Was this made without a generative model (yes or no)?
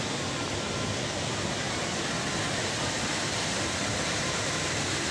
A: yes